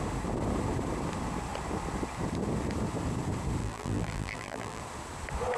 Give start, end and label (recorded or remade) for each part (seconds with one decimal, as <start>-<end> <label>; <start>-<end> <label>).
0.0-3.6 recorded; 3.6-4.8 remade; 4.8-5.6 recorded